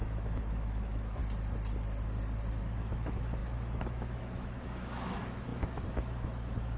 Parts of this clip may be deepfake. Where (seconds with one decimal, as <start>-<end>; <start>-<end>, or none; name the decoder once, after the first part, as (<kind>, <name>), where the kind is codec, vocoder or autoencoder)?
0.0-1.2 (autoencoder, DAC-VAE); 2.6-6.8